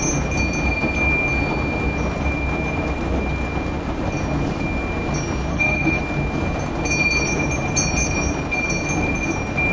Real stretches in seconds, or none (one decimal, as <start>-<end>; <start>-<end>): 0.0-5.5; 6.0-9.7